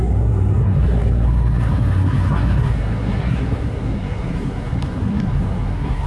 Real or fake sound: fake